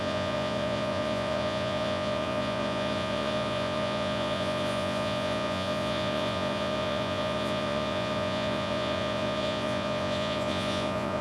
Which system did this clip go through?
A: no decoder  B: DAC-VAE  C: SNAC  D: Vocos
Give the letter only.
D